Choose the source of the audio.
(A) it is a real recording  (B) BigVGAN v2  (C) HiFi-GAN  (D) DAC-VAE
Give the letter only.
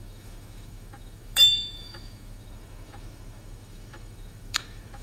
D